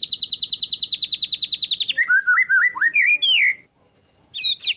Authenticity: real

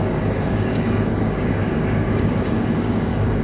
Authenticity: fake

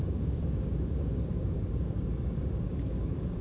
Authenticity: fake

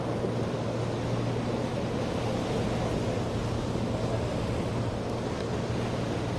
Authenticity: real